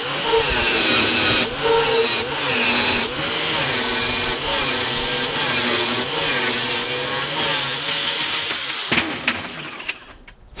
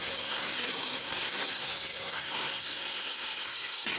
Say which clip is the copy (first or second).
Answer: second